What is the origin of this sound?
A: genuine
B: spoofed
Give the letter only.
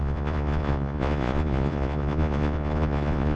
B